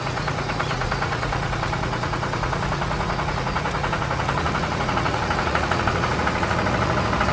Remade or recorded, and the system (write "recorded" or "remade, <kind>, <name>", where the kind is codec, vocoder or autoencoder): remade, vocoder, Vocos